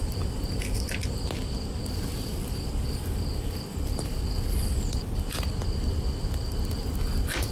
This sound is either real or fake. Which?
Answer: fake